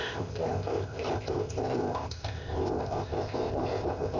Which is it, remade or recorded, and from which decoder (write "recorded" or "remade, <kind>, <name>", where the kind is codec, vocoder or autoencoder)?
remade, codec, ZipCodec